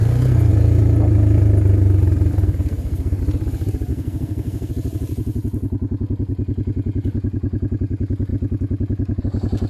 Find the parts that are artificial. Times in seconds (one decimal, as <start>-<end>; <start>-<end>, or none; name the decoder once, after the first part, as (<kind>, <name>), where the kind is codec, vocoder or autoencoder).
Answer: 0.0-0.5 (codec, SNAC); 2.3-3.2; 3.9-4.7